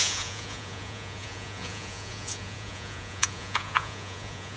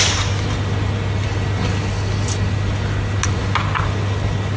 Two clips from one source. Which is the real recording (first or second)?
second